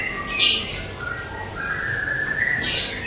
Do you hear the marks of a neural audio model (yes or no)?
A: no